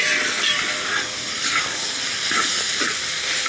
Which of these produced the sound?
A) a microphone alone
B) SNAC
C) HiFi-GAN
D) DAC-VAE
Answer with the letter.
A